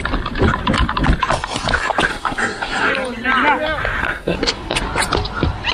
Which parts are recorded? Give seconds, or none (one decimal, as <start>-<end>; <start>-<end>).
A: 0.0-2.1; 2.9-4.0; 4.8-5.7